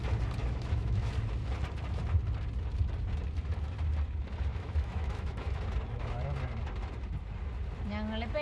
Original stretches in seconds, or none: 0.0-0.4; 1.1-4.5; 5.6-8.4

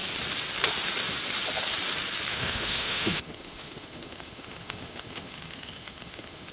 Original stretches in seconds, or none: 0.0-2.3

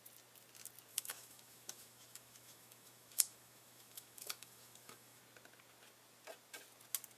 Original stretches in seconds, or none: 0.0-0.9; 5.2-7.2

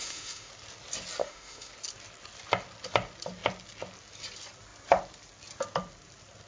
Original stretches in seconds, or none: 0.5-1.2; 1.7-6.5